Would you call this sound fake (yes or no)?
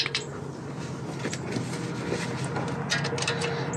no